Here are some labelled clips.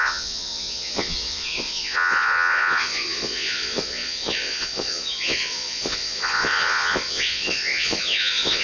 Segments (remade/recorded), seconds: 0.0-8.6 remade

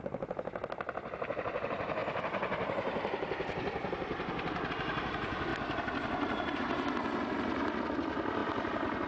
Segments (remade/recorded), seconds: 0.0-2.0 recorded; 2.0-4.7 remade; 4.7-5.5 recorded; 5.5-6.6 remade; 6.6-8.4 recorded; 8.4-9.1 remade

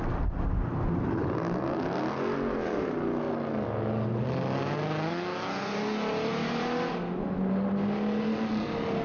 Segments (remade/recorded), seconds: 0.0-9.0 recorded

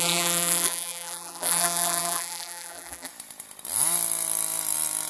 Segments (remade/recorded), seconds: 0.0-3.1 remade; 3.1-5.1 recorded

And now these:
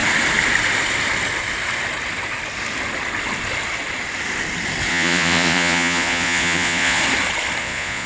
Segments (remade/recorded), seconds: 0.0-4.9 recorded; 4.9-7.0 remade; 7.0-7.6 recorded; 7.6-8.1 remade

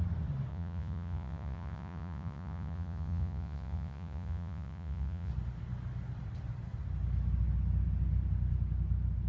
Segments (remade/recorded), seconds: 0.0-0.5 recorded; 0.5-5.3 remade; 5.3-9.3 recorded

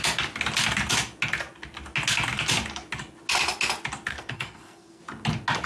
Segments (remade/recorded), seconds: 0.0-4.1 recorded; 4.1-5.0 remade; 5.0-5.7 recorded

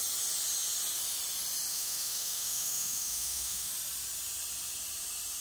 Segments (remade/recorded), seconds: 0.0-1.7 recorded; 1.7-3.7 remade; 3.7-5.4 recorded